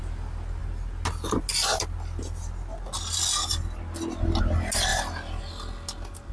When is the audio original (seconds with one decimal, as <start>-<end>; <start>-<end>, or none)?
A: 0.0-6.3